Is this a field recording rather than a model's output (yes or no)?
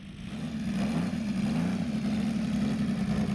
yes